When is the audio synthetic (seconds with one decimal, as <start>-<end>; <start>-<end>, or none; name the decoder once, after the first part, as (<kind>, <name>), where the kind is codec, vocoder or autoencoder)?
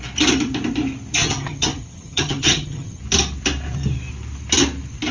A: 1.2-3.0 (vocoder, HiFi-GAN)